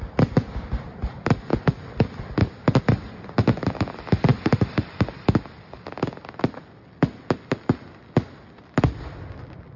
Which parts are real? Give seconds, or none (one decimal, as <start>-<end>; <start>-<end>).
0.0-9.8